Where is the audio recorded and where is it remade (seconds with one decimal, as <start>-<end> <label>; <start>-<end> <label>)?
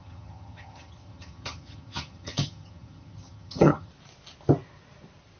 0.0-3.9 remade; 3.9-5.4 recorded